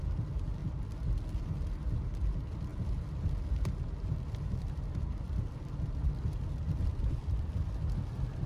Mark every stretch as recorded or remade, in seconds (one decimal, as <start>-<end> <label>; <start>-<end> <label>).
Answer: 0.0-0.6 remade; 0.6-1.3 recorded; 1.3-2.7 remade; 2.7-4.4 recorded; 4.4-6.3 remade; 6.3-7.1 recorded; 7.1-8.5 remade